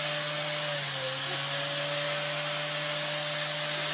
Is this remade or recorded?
recorded